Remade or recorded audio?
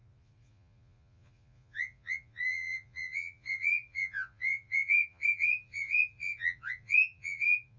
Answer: remade